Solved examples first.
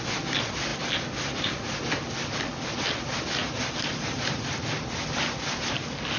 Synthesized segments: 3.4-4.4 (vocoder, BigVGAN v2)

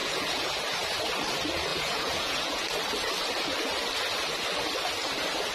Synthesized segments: 0.0-0.5 (vocoder, Vocos); 1.7-2.7

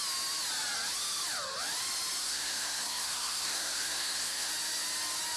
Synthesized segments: 2.2-4.5 (codec, SNAC)

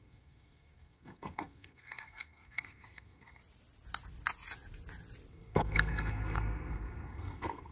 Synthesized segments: 0.0-3.4 (codec, SNAC); 5.3-7.7